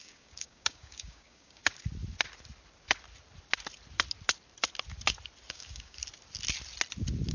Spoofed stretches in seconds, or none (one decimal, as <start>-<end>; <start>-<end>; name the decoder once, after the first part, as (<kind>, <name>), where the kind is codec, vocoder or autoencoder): 0.0-1.6 (codec, DAC); 5.5-6.0